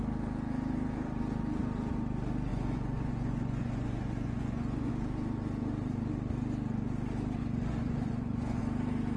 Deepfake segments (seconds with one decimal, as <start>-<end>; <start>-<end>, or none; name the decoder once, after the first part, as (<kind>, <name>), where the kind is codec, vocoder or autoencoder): 2.5-4.9 (vocoder, Vocos); 7.4-8.6